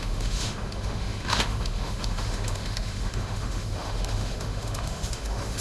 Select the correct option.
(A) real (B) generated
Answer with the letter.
B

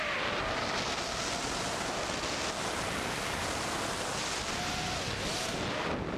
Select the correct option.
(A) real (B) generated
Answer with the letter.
A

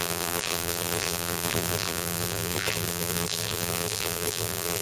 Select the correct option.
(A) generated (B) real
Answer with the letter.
A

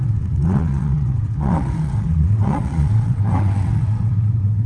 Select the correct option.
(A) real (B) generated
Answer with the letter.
B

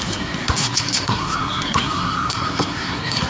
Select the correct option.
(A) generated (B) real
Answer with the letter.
A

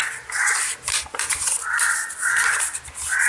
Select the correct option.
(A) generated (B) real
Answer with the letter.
B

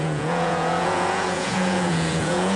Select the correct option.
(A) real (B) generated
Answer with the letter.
B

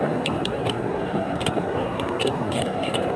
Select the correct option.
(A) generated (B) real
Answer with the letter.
A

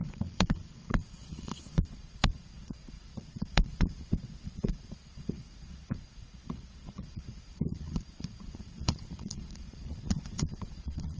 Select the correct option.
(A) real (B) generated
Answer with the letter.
B